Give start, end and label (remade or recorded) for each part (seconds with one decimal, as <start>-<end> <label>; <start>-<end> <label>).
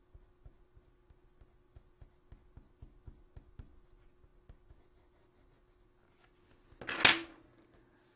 0.0-8.2 recorded